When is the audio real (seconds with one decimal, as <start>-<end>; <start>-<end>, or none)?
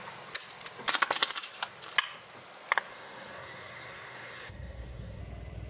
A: 0.0-2.9; 5.2-5.7